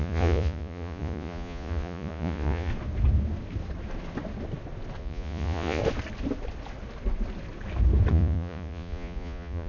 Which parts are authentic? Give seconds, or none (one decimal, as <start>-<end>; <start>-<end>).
2.7-5.0; 5.8-8.1